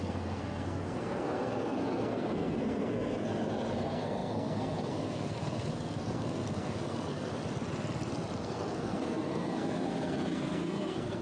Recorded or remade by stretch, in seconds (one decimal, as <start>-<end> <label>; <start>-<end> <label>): 0.0-7.3 remade; 7.3-8.4 recorded; 8.4-11.2 remade